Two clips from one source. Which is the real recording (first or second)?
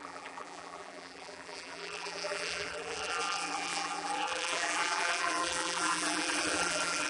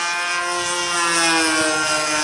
second